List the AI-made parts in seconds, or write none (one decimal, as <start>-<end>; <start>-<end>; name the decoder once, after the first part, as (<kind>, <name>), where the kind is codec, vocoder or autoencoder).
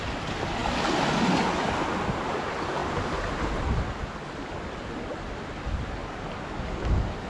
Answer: none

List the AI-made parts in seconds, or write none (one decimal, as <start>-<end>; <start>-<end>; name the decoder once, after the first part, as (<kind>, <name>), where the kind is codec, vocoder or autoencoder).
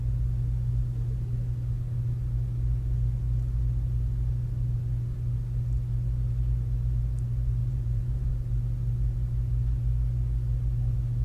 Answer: 7.6-8.3 (vocoder, Vocos)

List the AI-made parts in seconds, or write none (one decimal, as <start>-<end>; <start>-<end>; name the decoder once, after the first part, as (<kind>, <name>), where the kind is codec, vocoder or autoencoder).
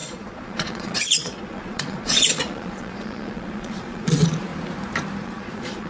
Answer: 0.0-4.5 (vocoder, Vocos); 5.2-5.9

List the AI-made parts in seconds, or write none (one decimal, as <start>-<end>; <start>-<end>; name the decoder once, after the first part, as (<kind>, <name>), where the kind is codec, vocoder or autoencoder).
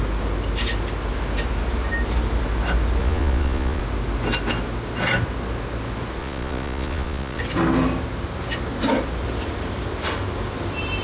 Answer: 3.0-3.8 (vocoder, Vocos); 6.2-7.4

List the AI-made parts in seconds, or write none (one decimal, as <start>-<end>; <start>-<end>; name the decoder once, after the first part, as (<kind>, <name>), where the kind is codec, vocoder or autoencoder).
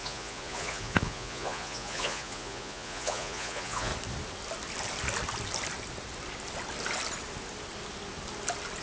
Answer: 0.0-3.9 (vocoder, Vocos)